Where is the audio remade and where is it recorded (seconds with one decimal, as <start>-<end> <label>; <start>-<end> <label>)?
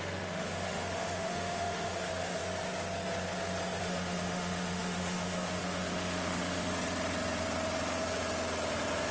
0.0-2.4 remade; 2.4-3.8 recorded; 3.8-6.7 remade; 6.7-9.1 recorded